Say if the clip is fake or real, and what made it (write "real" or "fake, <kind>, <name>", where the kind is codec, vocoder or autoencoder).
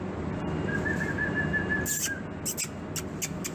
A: real